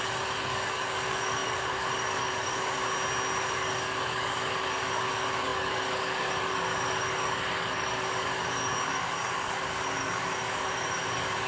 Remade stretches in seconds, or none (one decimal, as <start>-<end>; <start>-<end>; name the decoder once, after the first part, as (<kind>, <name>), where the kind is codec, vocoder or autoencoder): 0.0-2.8 (codec, DAC); 3.4-11.5